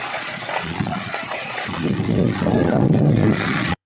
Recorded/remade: remade